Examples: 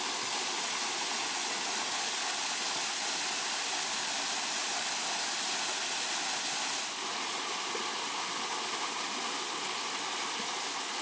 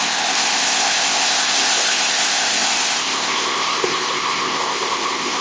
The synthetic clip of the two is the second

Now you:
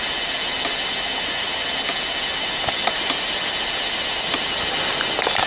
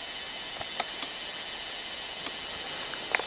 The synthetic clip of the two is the first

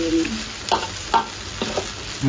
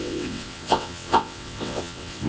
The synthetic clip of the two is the second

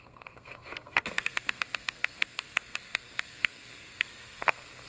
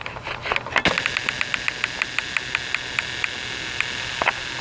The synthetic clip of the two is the first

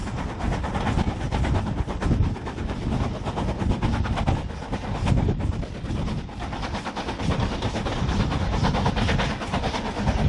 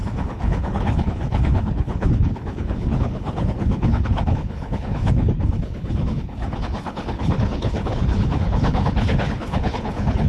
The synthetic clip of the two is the second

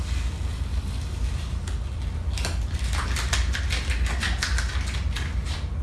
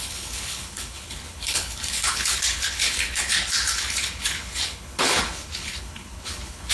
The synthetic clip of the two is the second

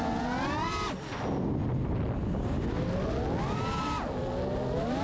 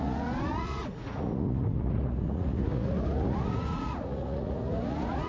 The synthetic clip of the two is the second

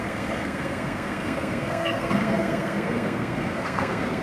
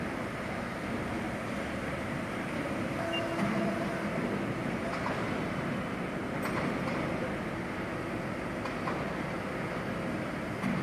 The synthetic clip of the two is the first